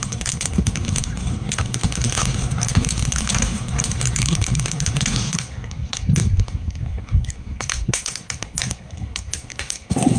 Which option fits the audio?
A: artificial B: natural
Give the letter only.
A